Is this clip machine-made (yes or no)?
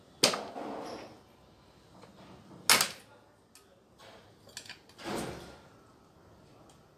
no